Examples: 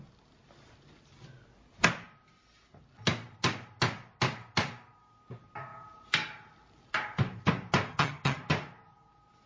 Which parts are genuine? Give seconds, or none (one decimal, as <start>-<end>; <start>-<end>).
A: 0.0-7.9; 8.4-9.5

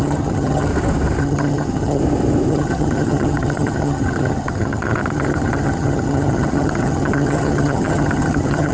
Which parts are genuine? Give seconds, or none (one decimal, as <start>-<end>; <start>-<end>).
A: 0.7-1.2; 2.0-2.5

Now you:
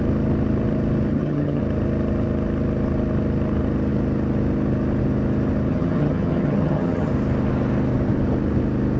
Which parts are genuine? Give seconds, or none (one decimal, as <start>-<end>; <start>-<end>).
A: 0.0-1.1; 1.6-5.7; 7.1-9.0